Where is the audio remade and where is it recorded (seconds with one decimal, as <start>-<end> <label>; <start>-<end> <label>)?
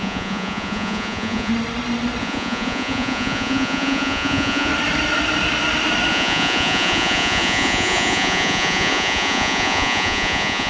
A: 0.0-1.5 remade; 1.5-2.2 recorded; 2.2-4.7 remade; 4.7-6.1 recorded; 6.1-10.7 remade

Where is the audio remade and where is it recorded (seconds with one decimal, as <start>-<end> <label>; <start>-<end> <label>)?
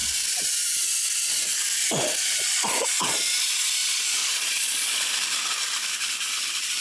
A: 0.0-2.2 recorded; 2.2-3.2 remade; 3.2-3.8 recorded; 3.8-5.1 remade; 5.1-6.8 recorded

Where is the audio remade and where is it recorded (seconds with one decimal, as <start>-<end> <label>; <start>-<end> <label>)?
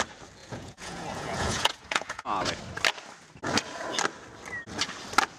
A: 0.0-0.4 recorded; 0.4-2.6 remade; 2.6-5.4 recorded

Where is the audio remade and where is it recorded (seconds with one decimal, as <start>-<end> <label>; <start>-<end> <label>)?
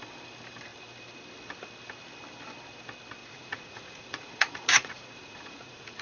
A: 0.0-3.2 recorded; 3.2-6.0 remade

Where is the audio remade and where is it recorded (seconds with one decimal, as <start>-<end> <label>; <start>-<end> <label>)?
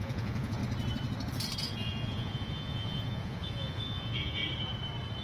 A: 0.0-0.6 remade; 0.6-1.6 recorded; 1.6-4.4 remade; 4.4-5.2 recorded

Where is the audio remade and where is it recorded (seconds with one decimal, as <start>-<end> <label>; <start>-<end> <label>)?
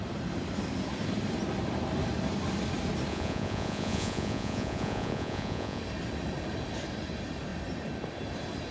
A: 0.0-3.1 recorded; 3.1-5.8 remade; 5.8-8.7 recorded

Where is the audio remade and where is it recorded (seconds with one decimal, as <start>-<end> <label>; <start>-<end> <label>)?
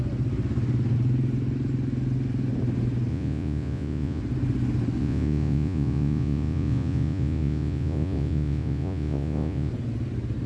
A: 0.0-3.1 recorded; 3.1-4.2 remade; 4.2-5.0 recorded; 5.0-9.7 remade; 9.7-10.5 recorded